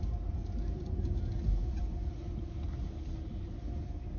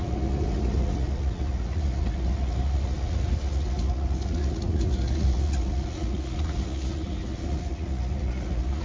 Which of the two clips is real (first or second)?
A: first